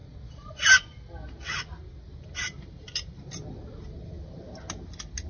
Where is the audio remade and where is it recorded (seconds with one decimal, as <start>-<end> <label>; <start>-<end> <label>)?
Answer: 0.0-0.6 remade; 0.6-5.3 recorded